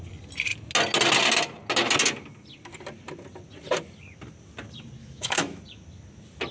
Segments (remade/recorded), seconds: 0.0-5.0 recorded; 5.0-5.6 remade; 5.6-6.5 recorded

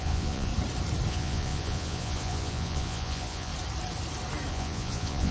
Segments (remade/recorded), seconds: 0.0-0.5 remade; 0.5-1.1 recorded; 1.1-3.5 remade; 3.5-4.5 recorded; 4.5-5.3 remade

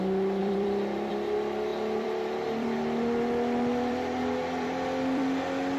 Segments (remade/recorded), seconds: 0.0-0.4 recorded; 0.4-1.1 remade; 1.1-1.7 recorded; 1.7-5.2 remade; 5.2-5.8 recorded

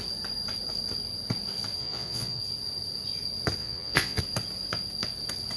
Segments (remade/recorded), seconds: 0.0-1.8 recorded; 1.8-2.4 remade; 2.4-3.6 recorded; 3.6-4.2 remade; 4.2-5.6 recorded